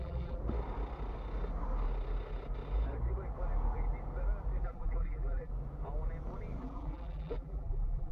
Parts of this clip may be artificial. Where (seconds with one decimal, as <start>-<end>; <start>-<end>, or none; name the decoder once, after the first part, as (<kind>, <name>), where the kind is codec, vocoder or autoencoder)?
0.0-0.4 (vocoder, BigVGAN v2); 4.6-5.5; 6.6-8.1